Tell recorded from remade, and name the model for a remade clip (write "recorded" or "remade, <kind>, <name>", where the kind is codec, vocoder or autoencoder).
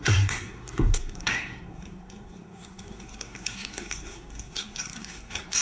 remade, codec, SNAC